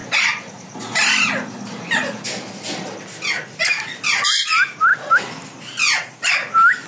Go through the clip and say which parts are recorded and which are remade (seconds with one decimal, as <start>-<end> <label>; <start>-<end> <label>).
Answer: 0.0-6.9 recorded